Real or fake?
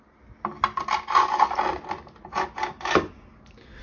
real